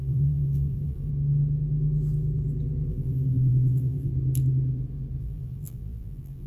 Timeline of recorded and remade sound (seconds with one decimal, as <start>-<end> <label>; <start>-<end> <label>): 0.0-1.1 remade; 1.1-2.9 recorded; 2.9-4.1 remade; 4.1-5.2 recorded; 5.2-6.5 remade